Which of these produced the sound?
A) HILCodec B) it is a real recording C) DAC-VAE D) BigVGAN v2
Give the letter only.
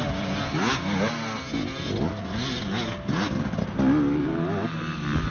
B